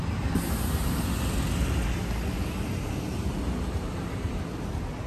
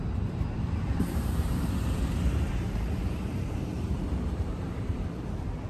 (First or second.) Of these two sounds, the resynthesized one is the second